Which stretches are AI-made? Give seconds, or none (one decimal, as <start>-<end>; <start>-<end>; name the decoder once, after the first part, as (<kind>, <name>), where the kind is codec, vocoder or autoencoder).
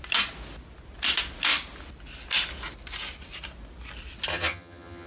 4.3-5.1 (vocoder, HiFi-GAN)